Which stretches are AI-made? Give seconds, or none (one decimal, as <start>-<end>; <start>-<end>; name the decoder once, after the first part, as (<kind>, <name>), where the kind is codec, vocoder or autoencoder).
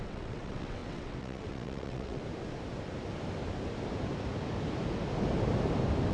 0.0-2.2 (vocoder, WaveNeXt)